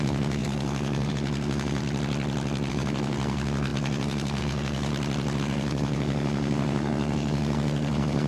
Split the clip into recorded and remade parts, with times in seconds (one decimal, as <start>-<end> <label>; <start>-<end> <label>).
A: 0.0-1.8 remade; 1.8-2.7 recorded; 2.7-4.9 remade; 4.9-5.4 recorded; 5.4-8.3 remade